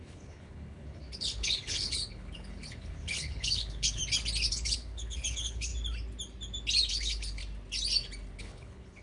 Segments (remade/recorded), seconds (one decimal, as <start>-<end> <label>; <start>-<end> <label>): 0.0-4.0 remade; 4.0-4.5 recorded; 4.5-5.7 remade; 5.7-6.9 recorded; 6.9-7.4 remade; 7.4-8.4 recorded; 8.4-9.0 remade